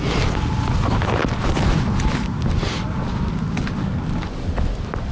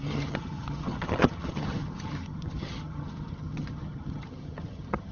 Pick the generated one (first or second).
second